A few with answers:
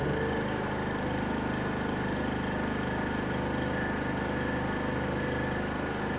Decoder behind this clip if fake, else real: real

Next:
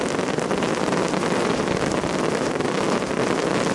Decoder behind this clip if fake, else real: real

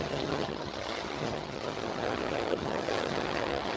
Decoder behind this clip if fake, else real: fake, vocoder, HiFi-GAN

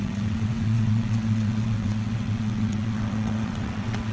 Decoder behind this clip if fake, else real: fake, vocoder, WaveNeXt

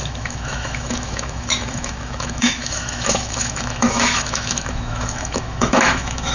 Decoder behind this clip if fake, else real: fake, autoencoder, DAC-VAE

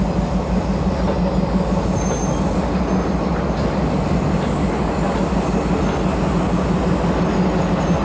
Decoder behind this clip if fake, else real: real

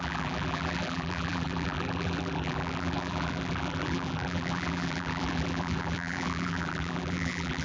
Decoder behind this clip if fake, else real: fake, vocoder, BigVGAN v2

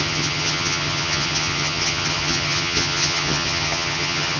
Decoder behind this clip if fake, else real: fake, vocoder, HiFi-GAN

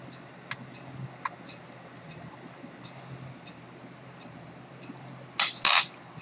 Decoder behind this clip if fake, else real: real